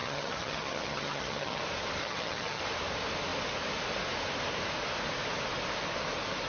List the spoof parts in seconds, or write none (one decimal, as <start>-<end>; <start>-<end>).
0.0-1.6; 2.0-2.6

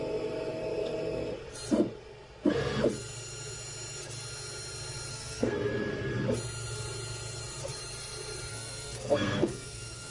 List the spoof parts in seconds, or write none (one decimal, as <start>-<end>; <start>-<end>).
5.1-5.7; 8.5-10.1

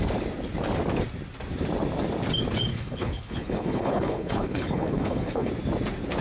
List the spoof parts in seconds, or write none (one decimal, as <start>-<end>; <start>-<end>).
2.7-5.5

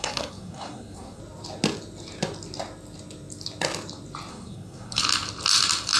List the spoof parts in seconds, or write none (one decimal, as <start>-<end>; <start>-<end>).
0.0-1.2; 4.3-5.0

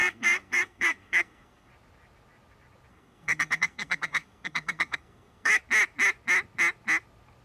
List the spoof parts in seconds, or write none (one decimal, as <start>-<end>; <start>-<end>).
0.0-1.7; 2.9-5.6

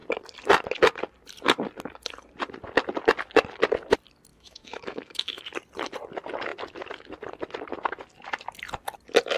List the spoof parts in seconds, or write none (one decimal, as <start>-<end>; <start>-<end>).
4.3-5.4

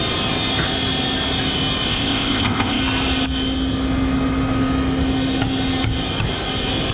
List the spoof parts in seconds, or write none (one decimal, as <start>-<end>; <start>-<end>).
1.9-2.8

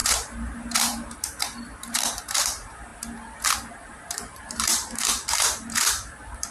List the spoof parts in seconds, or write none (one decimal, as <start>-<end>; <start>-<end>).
0.0-2.9; 3.7-6.5